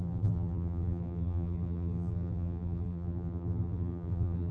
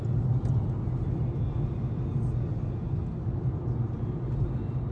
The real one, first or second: second